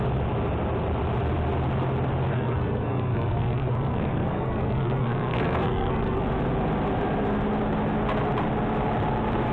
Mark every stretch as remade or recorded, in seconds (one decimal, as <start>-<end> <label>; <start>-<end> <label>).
0.0-2.3 recorded; 2.3-6.3 remade; 6.3-9.5 recorded